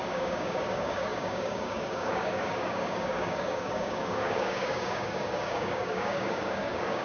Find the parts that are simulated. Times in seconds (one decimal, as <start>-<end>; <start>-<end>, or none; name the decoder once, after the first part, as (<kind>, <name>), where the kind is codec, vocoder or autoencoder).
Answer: 0.0-7.0 (codec, DAC)